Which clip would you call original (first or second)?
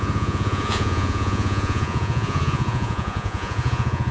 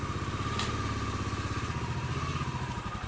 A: second